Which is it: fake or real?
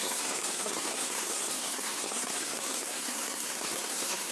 fake